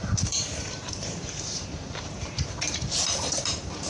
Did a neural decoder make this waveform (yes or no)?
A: yes